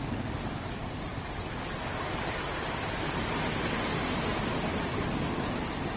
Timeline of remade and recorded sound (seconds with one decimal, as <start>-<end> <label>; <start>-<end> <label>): 0.0-6.0 recorded